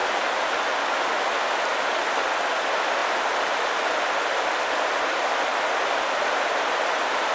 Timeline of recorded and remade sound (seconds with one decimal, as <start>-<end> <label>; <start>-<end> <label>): 0.0-7.3 recorded